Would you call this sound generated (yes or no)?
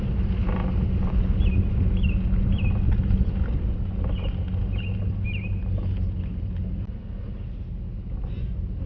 no